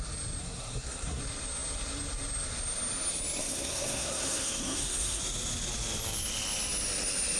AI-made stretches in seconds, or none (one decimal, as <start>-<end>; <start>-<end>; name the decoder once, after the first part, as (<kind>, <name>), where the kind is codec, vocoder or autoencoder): 0.4-1.2 (codec, SNAC); 3.4-5.2